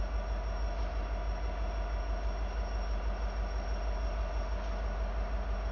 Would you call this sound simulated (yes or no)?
no